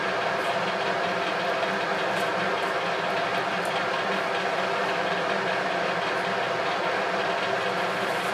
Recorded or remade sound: recorded